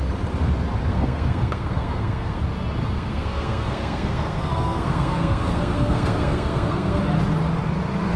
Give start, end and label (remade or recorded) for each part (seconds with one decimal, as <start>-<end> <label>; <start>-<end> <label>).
0.0-0.9 recorded; 0.9-2.4 remade; 2.4-2.8 recorded; 2.8-7.0 remade; 7.0-8.2 recorded